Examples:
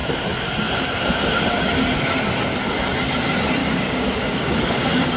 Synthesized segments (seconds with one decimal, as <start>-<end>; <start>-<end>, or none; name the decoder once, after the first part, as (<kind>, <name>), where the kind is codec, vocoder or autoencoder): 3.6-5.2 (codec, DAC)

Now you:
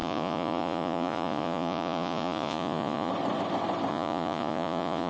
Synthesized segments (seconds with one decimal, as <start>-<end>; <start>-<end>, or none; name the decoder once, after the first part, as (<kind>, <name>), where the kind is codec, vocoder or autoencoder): 0.0-3.1 (vocoder, Vocos); 3.9-5.1

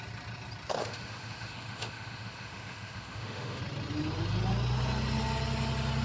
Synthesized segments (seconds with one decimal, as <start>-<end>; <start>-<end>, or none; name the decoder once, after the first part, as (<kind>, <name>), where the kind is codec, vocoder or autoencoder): 0.8-3.6 (autoencoder, DAC-VAE)

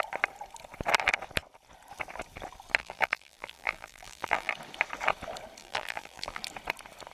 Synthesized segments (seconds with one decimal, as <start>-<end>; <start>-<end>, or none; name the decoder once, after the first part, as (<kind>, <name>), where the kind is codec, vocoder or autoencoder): 2.8-4.5 (vocoder, BigVGAN v2); 5.6-6.4